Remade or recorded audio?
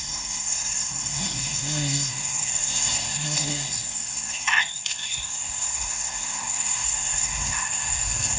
remade